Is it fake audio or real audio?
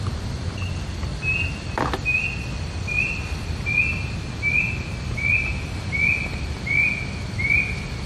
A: real